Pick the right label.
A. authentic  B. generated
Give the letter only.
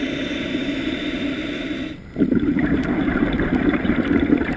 B